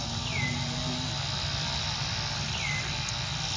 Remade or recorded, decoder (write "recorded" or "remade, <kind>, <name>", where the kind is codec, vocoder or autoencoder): recorded